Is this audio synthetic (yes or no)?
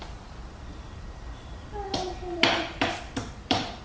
yes